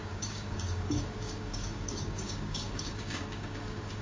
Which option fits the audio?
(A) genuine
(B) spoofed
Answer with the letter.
B